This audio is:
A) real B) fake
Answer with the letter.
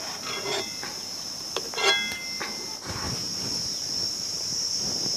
A